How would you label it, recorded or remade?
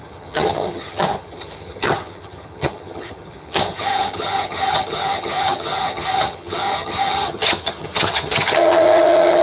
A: remade